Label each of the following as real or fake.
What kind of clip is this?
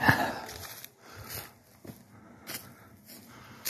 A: real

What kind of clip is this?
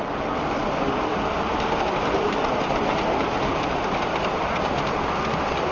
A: fake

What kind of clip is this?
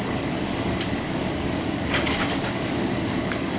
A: fake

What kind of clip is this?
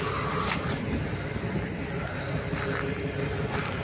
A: real